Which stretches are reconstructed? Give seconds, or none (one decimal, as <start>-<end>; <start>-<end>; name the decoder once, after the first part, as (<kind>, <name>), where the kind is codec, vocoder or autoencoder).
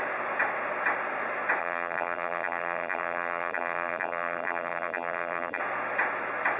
1.6-5.6 (vocoder, BigVGAN v2)